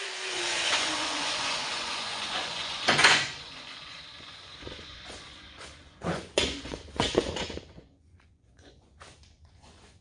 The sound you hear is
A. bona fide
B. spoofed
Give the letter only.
B